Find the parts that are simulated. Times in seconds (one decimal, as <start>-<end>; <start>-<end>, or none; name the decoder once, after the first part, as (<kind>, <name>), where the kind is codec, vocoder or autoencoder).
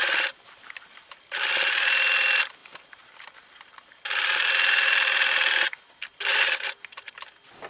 none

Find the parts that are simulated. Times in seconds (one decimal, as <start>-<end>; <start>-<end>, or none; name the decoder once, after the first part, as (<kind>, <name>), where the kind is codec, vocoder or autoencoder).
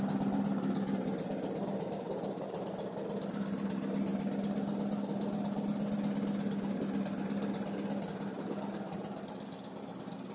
none